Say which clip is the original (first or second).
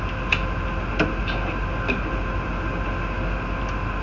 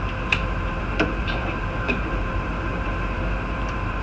first